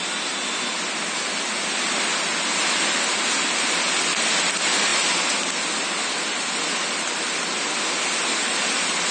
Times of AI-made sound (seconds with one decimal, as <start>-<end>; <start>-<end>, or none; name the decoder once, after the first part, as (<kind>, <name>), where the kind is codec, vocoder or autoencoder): none